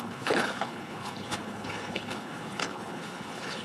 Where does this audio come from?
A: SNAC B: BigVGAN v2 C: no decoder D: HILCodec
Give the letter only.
D